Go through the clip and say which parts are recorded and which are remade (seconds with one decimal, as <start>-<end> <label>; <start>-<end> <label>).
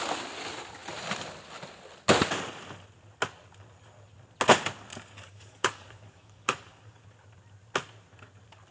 0.0-4.9 recorded; 4.9-7.0 remade; 7.0-8.7 recorded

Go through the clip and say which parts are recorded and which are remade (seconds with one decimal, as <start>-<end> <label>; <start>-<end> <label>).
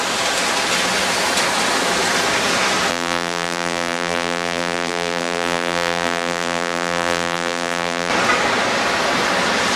0.0-2.9 recorded; 2.9-8.1 remade; 8.1-9.8 recorded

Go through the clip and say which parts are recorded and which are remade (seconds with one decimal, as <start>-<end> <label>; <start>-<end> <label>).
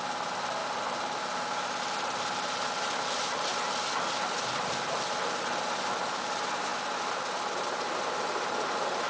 0.0-9.1 recorded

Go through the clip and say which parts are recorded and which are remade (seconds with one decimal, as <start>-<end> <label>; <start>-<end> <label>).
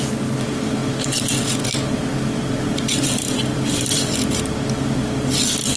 0.0-2.7 recorded; 2.7-5.8 remade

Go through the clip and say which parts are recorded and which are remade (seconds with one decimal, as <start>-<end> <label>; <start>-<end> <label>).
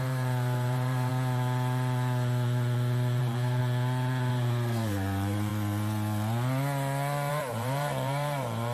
0.0-1.1 remade; 1.1-3.2 recorded; 3.2-3.6 remade; 3.6-4.3 recorded; 4.3-5.5 remade; 5.5-7.3 recorded; 7.3-8.7 remade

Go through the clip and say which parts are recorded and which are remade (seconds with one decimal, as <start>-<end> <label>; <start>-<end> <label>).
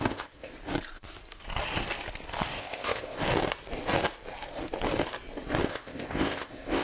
0.0-0.5 remade; 0.5-2.6 recorded; 2.6-3.2 remade; 3.2-5.7 recorded; 5.7-6.8 remade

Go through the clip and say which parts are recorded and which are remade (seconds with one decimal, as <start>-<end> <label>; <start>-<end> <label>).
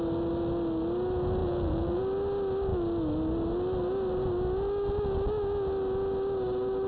0.0-1.4 recorded; 1.4-2.0 remade; 2.0-6.9 recorded